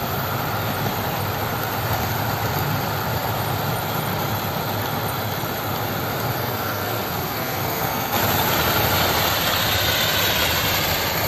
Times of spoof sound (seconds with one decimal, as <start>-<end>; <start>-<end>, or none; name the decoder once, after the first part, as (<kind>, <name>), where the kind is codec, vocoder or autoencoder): 6.4-8.2 (codec, SNAC)